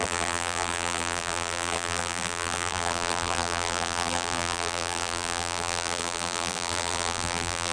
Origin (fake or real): fake